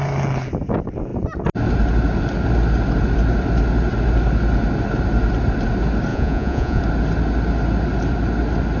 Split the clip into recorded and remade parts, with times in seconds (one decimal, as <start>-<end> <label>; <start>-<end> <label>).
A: 0.0-6.1 recorded; 6.1-6.8 remade; 6.8-8.8 recorded